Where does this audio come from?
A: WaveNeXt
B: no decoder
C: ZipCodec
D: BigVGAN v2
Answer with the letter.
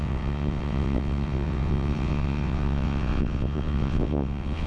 A